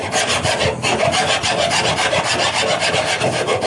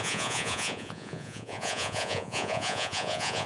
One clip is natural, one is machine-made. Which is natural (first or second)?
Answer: first